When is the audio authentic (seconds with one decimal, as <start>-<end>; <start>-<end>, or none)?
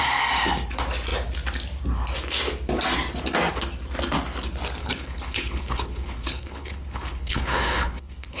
0.0-4.8